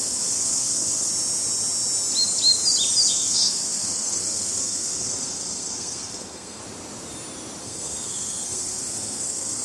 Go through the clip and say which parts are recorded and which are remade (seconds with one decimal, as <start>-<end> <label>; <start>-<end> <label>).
0.0-1.1 remade; 1.1-3.1 recorded; 3.1-6.6 remade; 6.6-7.6 recorded; 7.6-9.6 remade